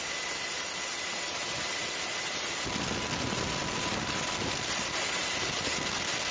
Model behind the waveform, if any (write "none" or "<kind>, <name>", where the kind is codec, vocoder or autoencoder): none